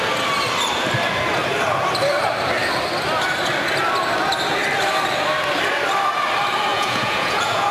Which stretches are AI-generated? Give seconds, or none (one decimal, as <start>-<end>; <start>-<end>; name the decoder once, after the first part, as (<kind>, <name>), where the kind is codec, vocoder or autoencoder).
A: 6.7-7.7 (vocoder, Vocos)